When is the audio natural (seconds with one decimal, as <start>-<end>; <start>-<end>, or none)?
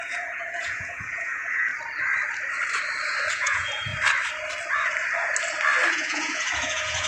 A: 1.7-3.3; 3.9-5.9